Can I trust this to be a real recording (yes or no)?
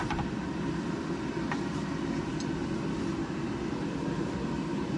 no